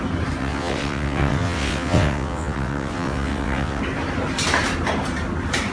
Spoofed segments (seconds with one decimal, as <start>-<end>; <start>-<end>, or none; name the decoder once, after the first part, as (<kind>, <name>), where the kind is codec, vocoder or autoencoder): 0.4-3.8 (vocoder, WaveNeXt)